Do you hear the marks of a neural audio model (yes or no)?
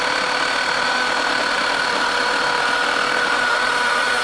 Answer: no